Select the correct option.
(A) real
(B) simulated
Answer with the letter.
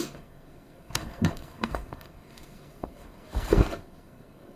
B